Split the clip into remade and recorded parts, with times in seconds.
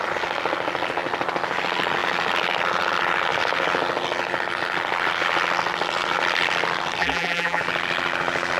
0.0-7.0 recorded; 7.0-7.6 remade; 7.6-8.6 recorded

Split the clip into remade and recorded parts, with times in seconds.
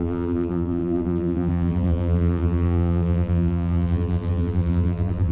0.0-5.3 remade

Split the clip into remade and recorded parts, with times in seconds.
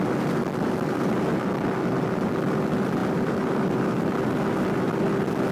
0.0-3.0 recorded; 3.0-3.8 remade; 3.8-5.5 recorded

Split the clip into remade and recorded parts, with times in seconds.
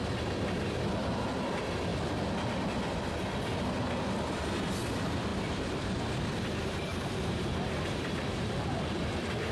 0.0-5.3 recorded; 5.3-5.9 remade; 5.9-6.9 recorded; 6.9-9.0 remade; 9.0-9.5 recorded